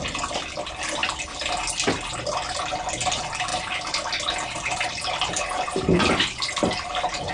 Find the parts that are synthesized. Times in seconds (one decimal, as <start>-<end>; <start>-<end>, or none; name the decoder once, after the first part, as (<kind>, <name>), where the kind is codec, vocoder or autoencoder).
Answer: 3.5-7.3 (vocoder, BigVGAN v2)